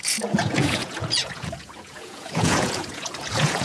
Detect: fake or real fake